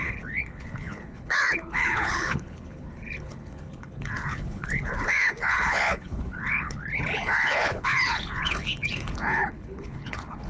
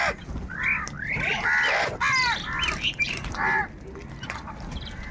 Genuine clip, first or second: second